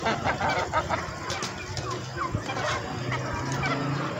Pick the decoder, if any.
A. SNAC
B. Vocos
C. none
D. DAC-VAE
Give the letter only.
C